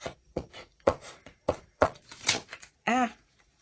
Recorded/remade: remade